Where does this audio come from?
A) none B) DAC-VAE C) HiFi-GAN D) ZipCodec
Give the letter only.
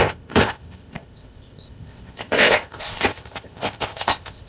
D